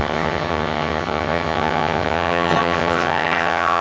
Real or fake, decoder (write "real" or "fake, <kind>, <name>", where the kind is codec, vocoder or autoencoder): fake, vocoder, HiFi-GAN